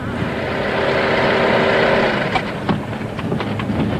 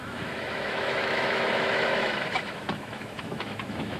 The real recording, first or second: first